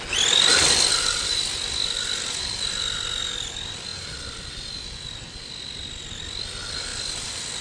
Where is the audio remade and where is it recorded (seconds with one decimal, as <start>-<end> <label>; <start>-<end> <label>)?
0.0-7.6 recorded